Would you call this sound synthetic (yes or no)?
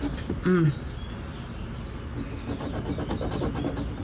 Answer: no